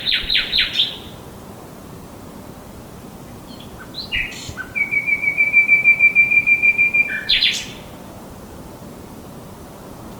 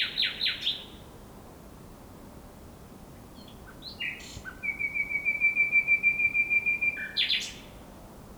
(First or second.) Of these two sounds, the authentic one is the second